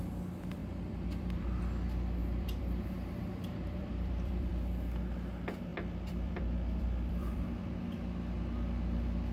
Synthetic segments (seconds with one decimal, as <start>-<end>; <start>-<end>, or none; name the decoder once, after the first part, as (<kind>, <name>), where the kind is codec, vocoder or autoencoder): 0.6-1.6 (vocoder, BigVGAN v2); 2.2-4.5; 5.7-7.5